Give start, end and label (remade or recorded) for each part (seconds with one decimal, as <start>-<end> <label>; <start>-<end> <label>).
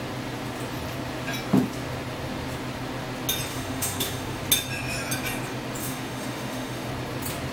0.0-3.5 recorded; 3.5-4.4 remade; 4.4-5.8 recorded; 5.8-6.9 remade; 6.9-7.5 recorded